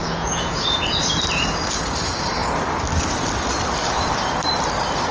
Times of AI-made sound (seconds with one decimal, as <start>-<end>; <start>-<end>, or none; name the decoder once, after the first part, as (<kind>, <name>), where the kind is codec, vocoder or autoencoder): 0.0-1.0 (vocoder, Vocos)